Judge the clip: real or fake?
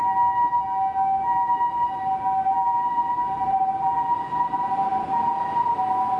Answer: real